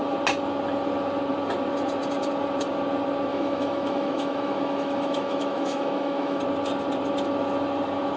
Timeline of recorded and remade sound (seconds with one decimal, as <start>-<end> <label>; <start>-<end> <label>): 0.0-3.3 recorded; 3.3-6.4 remade; 6.4-8.2 recorded